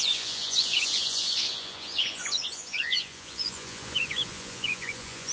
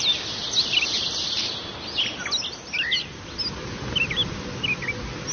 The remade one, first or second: first